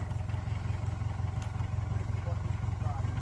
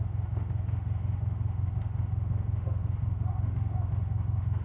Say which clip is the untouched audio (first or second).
first